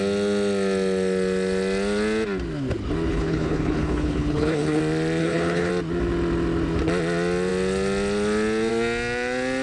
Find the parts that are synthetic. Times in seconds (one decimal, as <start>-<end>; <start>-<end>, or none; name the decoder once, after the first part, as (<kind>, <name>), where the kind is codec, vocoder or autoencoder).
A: 3.1-4.8 (codec, HILCodec); 5.2-5.7